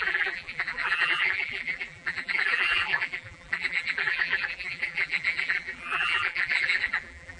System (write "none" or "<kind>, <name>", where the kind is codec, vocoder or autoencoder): vocoder, BigVGAN v2